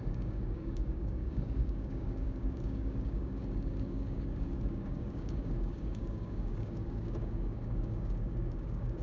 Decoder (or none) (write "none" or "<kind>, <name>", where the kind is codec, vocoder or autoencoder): codec, DAC